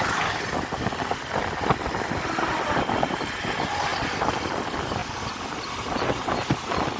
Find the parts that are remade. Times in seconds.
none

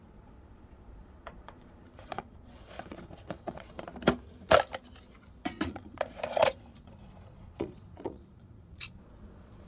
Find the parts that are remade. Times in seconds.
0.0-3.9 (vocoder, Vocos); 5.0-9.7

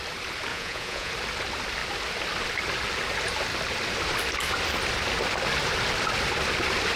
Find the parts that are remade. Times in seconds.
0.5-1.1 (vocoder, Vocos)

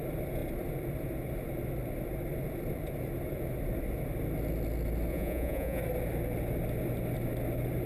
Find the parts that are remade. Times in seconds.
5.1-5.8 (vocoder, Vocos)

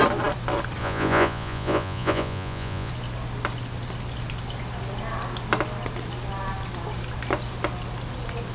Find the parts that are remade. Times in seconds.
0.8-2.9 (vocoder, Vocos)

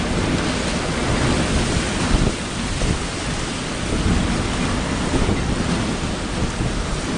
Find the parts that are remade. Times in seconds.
none

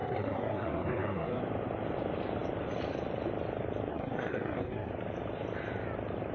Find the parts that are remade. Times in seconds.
0.0-1.4 (codec, SNAC); 3.9-4.9